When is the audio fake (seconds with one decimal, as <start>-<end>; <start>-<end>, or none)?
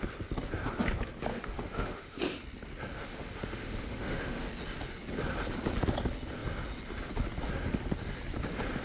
1.3-2.2; 2.9-4.5